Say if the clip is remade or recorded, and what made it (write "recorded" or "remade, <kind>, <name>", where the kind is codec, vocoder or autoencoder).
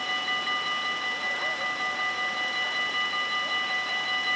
recorded